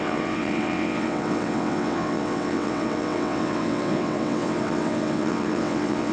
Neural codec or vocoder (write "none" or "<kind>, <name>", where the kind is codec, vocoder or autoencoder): vocoder, WaveNeXt